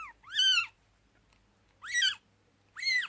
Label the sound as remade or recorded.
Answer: recorded